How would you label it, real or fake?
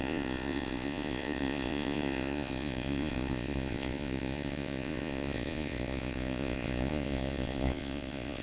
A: fake